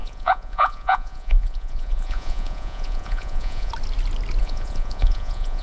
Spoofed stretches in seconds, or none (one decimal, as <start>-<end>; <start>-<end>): 0.0-3.7; 4.4-5.6